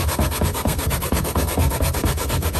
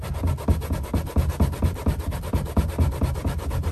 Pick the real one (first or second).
second